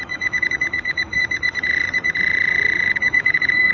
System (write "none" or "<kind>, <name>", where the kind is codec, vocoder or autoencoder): vocoder, Vocos